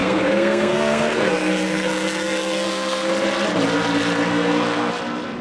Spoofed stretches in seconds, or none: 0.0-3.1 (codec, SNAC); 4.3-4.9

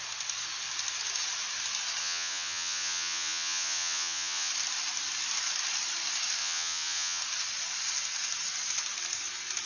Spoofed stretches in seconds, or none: 2.0-4.5 (vocoder, Vocos); 6.4-7.2

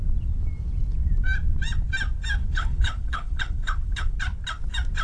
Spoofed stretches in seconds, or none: 2.4-4.2 (codec, HILCodec)

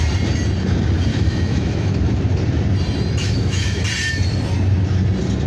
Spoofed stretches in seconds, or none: 1.1-1.9 (autoencoder, DAC-VAE); 3.2-3.8

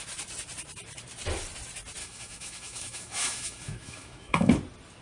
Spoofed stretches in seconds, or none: 2.0-4.5 (autoencoder, DAC-VAE)

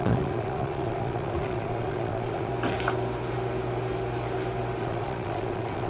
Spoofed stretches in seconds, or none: 0.0-2.5 (vocoder, Vocos); 4.8-5.9

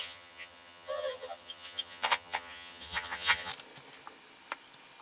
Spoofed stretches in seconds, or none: 0.0-3.5 (vocoder, HiFi-GAN)

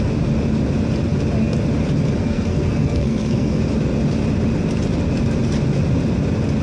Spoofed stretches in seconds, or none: 2.2-3.6 (codec, SNAC)